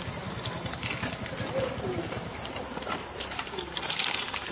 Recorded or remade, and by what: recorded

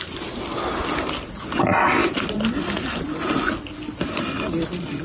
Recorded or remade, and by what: recorded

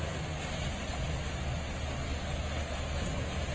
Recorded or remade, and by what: recorded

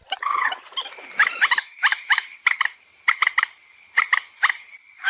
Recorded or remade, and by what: remade, vocoder, BigVGAN v2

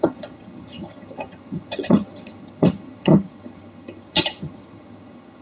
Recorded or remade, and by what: remade, vocoder, HiFi-GAN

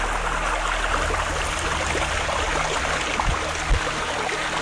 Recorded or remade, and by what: recorded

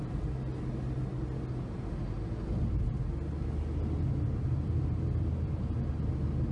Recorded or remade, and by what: recorded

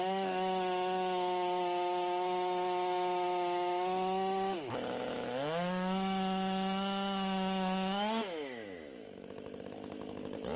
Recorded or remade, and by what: remade, autoencoder, DAC-VAE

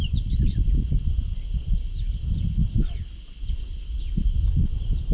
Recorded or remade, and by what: recorded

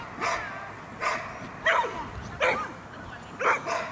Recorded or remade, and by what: recorded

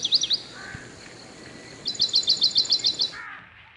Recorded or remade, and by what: recorded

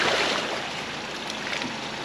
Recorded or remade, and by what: recorded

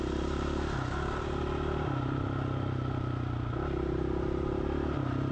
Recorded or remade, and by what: recorded